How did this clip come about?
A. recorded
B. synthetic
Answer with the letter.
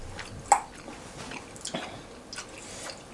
A